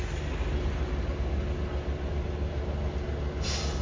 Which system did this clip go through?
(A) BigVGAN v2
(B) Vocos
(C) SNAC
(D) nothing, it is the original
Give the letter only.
D